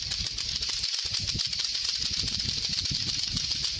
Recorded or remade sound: recorded